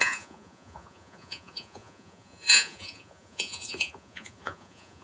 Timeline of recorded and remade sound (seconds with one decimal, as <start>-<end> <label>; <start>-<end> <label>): 0.0-5.0 remade